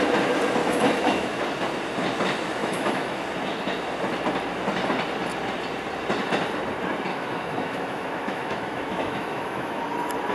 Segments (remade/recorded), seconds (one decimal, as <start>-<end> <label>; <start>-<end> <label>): 0.0-0.6 recorded; 0.6-1.4 remade; 1.4-2.6 recorded; 2.6-3.2 remade; 3.2-7.1 recorded; 7.1-9.8 remade; 9.8-10.3 recorded